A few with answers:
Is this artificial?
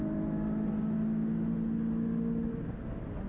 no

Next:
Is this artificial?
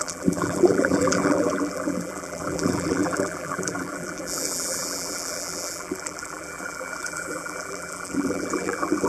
yes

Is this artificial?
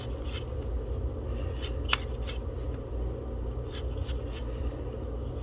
no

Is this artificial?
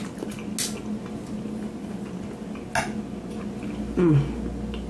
no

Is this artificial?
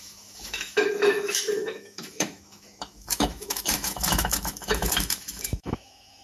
yes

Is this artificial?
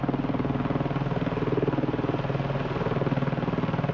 no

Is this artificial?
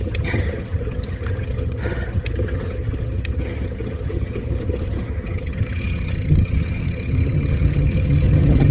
yes